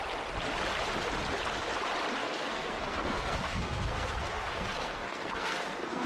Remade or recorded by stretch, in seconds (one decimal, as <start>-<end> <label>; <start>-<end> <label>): 0.0-2.2 recorded; 2.2-6.1 remade